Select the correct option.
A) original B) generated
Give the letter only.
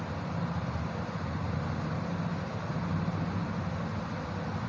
A